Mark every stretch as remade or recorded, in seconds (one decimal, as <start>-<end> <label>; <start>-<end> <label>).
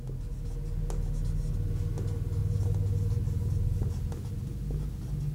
0.0-5.3 recorded